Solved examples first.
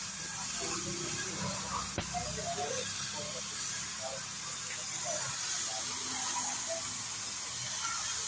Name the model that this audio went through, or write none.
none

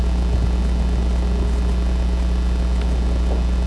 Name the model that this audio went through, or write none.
none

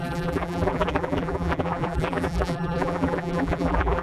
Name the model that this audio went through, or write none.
vocoder, BigVGAN v2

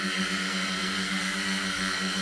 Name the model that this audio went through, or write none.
codec, SNAC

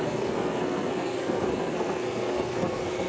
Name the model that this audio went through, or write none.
codec, SNAC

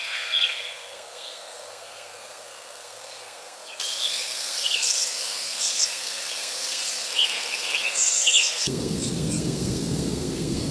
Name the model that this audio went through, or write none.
codec, SNAC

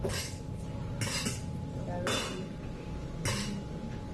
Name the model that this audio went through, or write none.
none